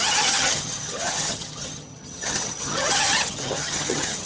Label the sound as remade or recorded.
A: remade